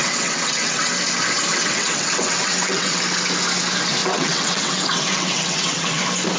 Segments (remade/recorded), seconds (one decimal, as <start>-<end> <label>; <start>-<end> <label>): 0.0-0.9 remade; 0.9-1.5 recorded; 1.5-3.0 remade; 3.0-4.0 recorded; 4.0-6.0 remade; 6.0-6.4 recorded